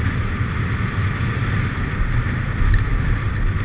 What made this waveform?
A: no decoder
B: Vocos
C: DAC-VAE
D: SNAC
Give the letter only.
A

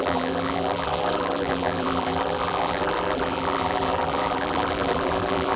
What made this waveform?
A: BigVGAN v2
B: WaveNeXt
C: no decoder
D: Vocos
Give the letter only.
A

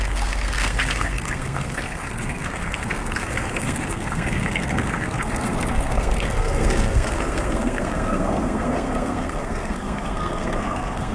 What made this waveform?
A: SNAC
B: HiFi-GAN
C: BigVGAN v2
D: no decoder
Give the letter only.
A